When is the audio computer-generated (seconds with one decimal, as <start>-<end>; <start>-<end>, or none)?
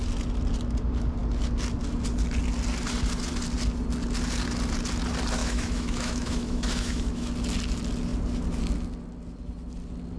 5.4-7.3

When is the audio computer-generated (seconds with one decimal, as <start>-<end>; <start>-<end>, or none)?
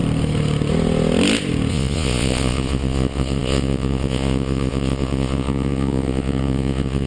1.7-7.1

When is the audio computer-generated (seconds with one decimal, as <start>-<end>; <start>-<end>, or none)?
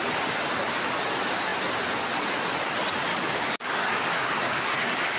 3.1-5.2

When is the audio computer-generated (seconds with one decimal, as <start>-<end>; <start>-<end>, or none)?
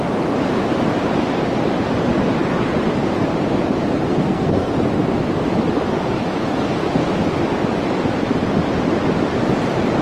4.1-4.7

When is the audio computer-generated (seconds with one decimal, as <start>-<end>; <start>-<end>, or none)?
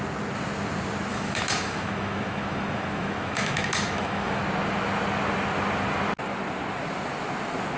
1.1-4.4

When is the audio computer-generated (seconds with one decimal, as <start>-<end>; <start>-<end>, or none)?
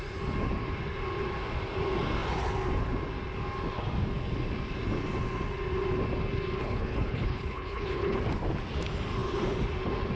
6.6-8.2